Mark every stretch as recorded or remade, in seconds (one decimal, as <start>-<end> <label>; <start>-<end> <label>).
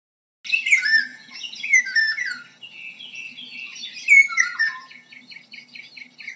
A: 0.0-1.1 recorded; 1.1-1.7 remade; 1.7-4.5 recorded; 4.5-5.2 remade; 5.2-6.4 recorded